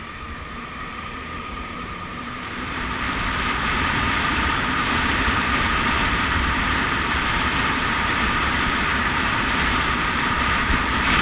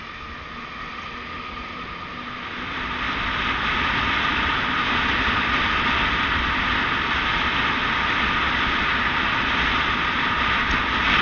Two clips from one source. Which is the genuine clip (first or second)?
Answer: second